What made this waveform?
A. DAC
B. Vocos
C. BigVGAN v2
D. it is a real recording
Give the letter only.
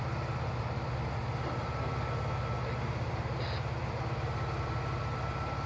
D